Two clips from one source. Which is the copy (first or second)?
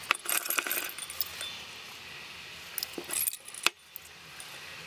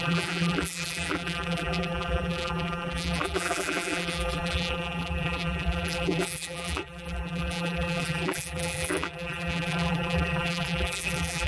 second